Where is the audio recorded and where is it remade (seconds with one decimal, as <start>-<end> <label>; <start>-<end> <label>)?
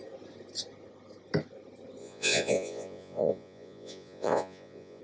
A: 0.0-2.0 recorded; 2.0-5.0 remade